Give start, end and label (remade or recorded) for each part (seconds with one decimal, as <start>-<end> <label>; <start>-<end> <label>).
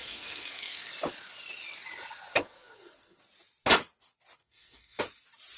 0.0-0.9 remade; 0.9-2.4 recorded; 2.4-3.2 remade; 3.2-4.4 recorded; 4.4-5.0 remade; 5.0-5.6 recorded